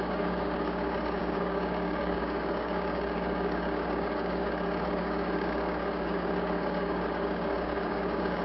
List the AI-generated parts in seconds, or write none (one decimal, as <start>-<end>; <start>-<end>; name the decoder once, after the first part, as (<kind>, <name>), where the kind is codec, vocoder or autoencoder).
0.0-8.4 (codec, DAC)